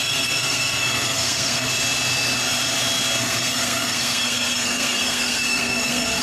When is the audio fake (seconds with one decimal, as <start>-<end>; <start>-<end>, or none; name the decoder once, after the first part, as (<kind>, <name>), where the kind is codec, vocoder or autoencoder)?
0.0-1.7 (codec, SNAC); 3.2-6.2